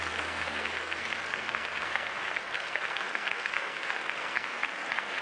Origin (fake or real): fake